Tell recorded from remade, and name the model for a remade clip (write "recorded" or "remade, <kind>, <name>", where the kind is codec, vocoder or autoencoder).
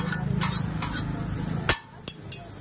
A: recorded